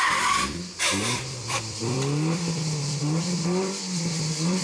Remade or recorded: remade